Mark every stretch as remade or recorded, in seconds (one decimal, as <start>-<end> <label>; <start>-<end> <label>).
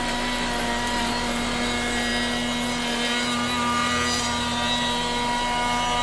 0.0-6.0 recorded